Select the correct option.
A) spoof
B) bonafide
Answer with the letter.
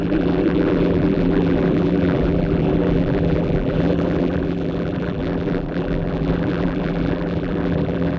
A